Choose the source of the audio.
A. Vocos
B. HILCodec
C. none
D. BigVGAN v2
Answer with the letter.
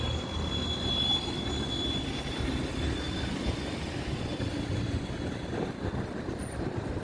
C